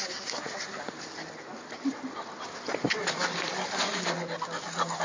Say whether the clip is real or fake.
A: real